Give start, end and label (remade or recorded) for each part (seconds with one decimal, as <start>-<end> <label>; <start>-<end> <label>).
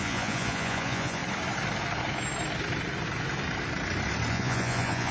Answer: 0.0-1.2 remade; 1.2-4.3 recorded; 4.3-5.1 remade